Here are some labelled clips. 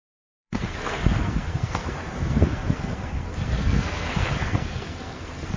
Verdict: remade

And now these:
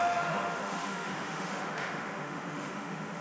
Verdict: remade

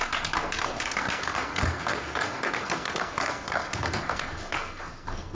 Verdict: remade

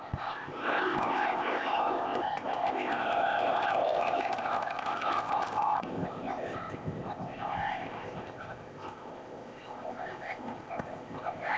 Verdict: remade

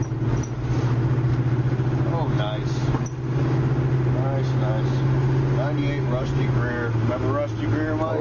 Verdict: recorded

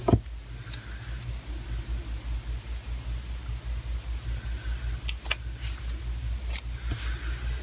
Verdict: recorded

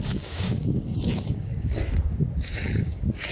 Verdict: remade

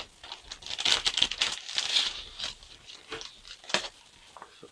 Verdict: recorded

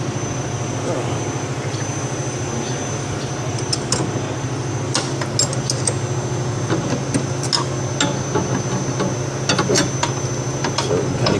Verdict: recorded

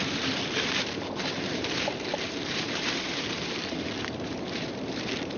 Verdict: remade